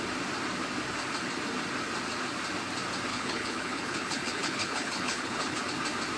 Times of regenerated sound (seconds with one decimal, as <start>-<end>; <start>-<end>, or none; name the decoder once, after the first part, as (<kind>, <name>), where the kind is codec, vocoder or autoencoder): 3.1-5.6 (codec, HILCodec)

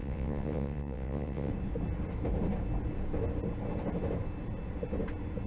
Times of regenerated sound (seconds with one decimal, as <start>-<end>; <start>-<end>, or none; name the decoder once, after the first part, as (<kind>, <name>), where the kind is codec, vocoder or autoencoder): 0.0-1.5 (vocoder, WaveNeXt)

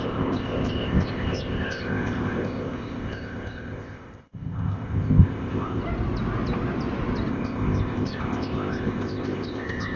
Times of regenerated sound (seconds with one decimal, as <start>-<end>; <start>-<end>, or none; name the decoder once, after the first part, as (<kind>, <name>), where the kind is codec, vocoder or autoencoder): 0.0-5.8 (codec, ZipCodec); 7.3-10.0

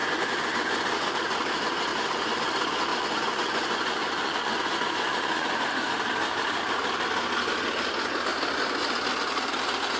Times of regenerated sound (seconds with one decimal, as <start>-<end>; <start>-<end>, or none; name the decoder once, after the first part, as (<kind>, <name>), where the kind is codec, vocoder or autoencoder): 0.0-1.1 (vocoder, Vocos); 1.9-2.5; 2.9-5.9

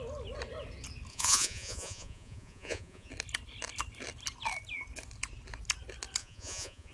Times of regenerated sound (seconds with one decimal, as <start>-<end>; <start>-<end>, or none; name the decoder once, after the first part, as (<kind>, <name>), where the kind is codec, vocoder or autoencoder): 1.1-3.1 (vocoder, Vocos); 6.2-6.9

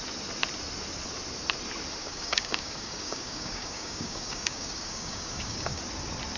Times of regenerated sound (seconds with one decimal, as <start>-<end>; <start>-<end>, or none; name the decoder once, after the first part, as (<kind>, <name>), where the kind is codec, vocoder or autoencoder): 2.0-5.8 (codec, DAC)